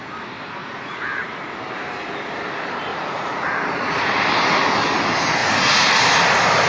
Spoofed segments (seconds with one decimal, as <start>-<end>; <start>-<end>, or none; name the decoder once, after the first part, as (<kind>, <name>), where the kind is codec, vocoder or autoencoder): 0.6-1.3 (vocoder, Vocos); 2.9-4.2; 5.4-5.9